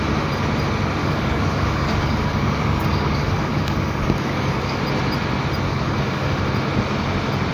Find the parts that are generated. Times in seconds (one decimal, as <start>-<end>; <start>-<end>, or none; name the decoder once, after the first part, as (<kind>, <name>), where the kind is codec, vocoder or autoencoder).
1.0-4.8 (codec, DAC); 5.7-6.4

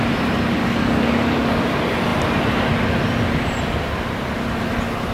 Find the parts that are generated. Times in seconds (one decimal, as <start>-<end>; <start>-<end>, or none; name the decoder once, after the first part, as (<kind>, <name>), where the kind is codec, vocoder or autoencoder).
0.6-1.6 (codec, DAC)

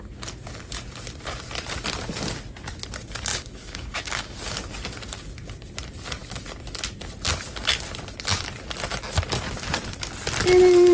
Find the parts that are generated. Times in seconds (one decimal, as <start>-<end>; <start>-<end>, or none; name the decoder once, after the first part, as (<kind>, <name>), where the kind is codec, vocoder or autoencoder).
3.3-4.4 (codec, DAC)

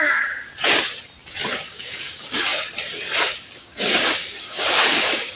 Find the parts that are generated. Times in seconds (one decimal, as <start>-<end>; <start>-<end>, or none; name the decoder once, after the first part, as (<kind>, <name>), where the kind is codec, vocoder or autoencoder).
0.0-0.5 (codec, DAC); 1.5-2.5; 3.2-5.4

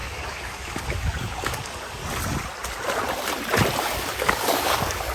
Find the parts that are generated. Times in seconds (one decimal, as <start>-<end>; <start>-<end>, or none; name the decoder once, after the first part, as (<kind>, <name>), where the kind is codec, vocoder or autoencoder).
0.0-2.0 (codec, DAC); 3.8-5.1

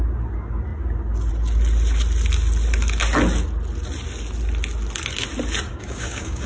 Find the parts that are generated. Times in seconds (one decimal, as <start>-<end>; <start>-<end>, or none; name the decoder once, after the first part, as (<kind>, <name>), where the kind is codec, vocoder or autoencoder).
5.7-6.5 (codec, DAC)

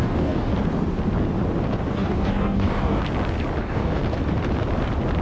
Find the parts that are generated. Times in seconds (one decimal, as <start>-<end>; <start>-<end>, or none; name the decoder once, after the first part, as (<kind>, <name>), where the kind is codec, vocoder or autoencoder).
0.0-0.5 (codec, DAC); 1.9-3.0; 3.6-4.0